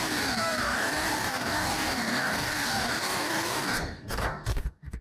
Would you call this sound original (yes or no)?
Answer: no